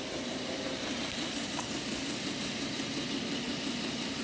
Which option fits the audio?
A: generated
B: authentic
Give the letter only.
B